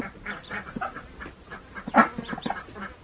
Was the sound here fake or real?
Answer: real